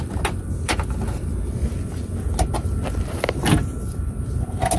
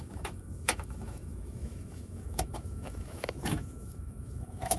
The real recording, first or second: first